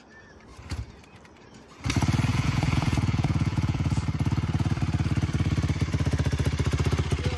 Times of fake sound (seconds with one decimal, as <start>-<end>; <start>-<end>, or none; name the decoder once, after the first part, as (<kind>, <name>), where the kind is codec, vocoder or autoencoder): 2.3-4.0 (vocoder, Vocos)